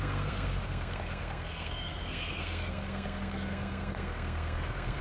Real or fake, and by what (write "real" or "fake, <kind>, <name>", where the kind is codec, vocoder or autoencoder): fake, codec, SNAC